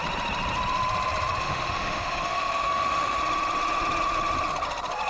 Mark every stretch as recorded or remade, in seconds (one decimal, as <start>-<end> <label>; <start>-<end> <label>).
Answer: 0.0-1.4 recorded; 1.4-3.2 remade; 3.2-5.1 recorded